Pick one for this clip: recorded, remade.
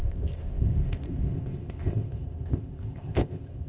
remade